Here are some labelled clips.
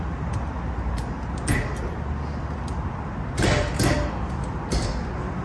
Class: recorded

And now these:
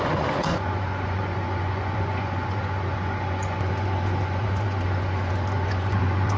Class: remade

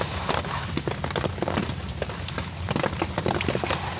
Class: recorded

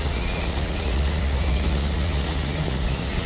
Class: remade